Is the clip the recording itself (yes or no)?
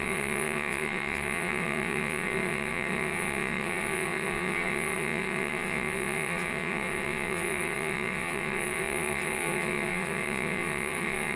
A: no